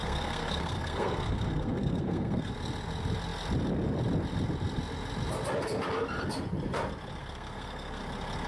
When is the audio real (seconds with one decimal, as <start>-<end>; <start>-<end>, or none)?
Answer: 2.5-7.2; 8.0-8.5